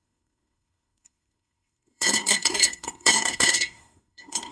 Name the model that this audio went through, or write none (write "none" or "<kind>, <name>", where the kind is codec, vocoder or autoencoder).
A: codec, SNAC